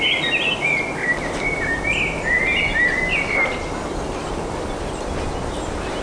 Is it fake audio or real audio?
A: real